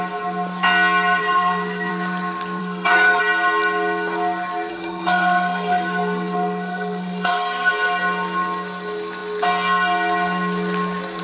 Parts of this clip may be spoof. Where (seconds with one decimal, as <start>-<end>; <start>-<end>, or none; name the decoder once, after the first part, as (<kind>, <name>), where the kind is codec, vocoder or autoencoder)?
1.2-1.9 (codec, SNAC); 2.6-3.2; 4.7-7.7